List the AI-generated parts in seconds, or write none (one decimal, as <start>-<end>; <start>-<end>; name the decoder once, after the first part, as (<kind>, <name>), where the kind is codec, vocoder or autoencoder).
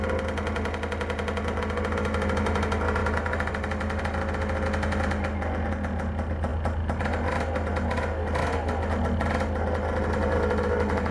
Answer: 3.0-4.0 (vocoder, BigVGAN v2)